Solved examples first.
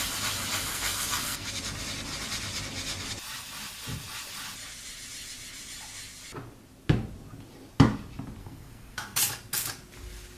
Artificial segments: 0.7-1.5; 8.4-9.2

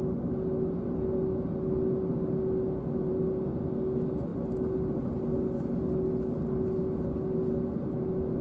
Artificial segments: none